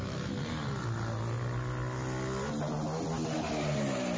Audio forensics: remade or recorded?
recorded